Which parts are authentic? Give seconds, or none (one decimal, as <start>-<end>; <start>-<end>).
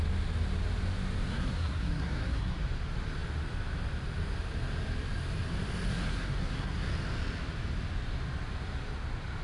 0.0-1.3; 2.6-5.9; 6.9-9.4